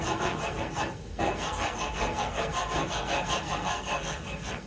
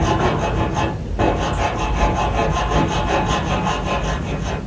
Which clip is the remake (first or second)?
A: first